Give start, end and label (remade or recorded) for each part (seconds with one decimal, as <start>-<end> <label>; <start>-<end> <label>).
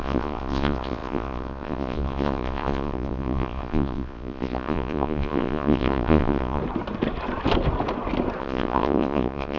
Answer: 0.0-6.6 remade; 6.6-8.4 recorded; 8.4-9.6 remade